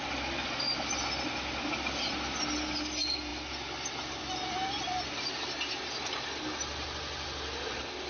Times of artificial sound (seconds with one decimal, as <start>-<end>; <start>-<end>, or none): none